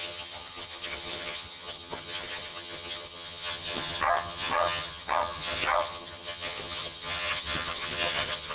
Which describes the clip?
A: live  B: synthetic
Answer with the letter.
B